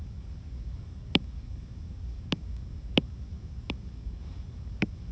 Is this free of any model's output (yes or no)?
no